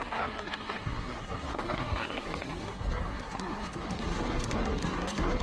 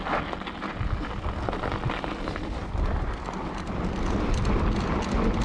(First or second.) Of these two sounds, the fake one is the first